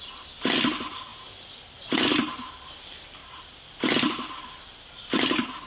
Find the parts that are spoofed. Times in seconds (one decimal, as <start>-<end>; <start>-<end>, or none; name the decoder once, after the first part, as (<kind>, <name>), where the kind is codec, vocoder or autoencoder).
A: 3.2-4.9 (vocoder, BigVGAN v2)